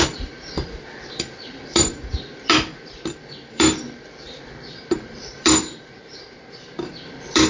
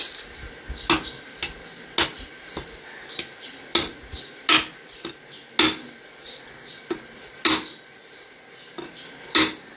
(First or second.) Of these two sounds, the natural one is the second